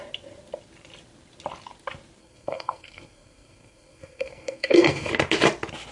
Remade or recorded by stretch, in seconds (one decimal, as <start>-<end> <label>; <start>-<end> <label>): 0.0-2.2 recorded; 2.2-5.1 remade; 5.1-5.9 recorded